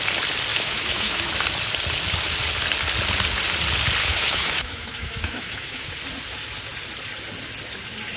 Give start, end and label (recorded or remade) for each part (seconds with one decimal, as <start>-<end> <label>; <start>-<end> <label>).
0.0-0.5 recorded; 0.5-1.3 remade; 1.3-4.0 recorded; 4.0-5.9 remade; 5.9-8.2 recorded